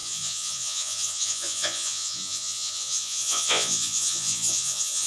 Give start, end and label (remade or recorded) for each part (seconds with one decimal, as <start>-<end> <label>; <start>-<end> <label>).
0.0-5.1 remade